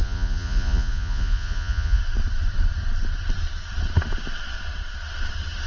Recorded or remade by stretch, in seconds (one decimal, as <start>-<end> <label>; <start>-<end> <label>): 0.0-2.0 remade; 2.0-5.7 recorded